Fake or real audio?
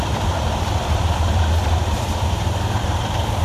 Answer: fake